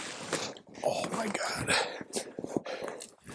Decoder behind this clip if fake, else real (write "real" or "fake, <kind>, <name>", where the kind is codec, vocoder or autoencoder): real